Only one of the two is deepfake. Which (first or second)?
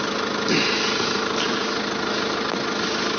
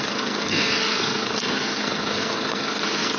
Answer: second